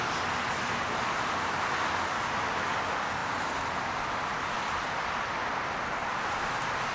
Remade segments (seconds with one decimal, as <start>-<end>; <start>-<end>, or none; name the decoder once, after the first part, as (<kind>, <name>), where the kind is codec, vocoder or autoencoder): none